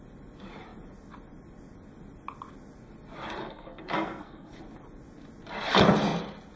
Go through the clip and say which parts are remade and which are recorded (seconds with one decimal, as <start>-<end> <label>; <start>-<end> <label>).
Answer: 0.0-3.4 recorded; 3.4-4.6 remade; 4.6-6.6 recorded